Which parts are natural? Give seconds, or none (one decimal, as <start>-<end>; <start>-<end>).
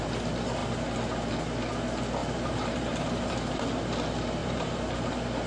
0.0-2.2; 3.6-4.4; 5.1-5.5